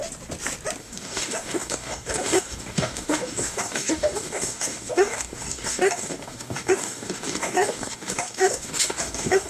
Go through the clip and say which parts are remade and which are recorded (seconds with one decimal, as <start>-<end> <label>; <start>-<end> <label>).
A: 0.0-0.8 recorded; 0.8-9.5 remade